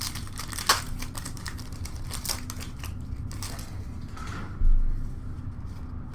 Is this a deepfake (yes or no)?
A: no